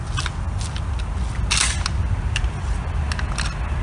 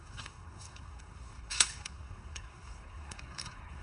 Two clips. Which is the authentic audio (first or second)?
first